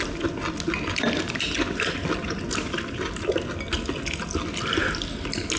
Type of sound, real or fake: real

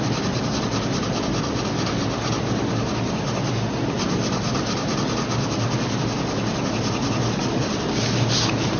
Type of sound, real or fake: real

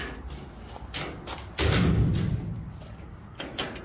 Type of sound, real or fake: real